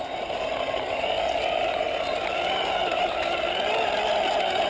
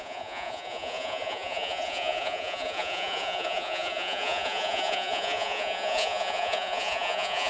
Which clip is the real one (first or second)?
first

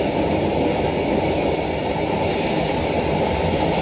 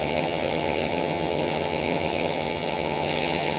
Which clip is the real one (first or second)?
first